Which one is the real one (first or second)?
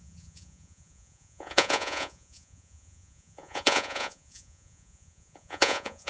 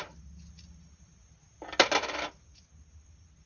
second